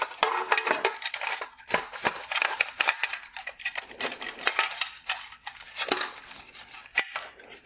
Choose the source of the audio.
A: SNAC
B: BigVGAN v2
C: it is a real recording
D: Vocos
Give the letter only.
B